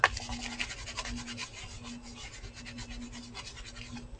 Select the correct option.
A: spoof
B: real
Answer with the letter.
B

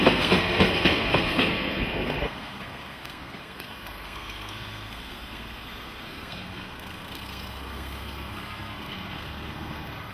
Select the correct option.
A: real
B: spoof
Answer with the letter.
B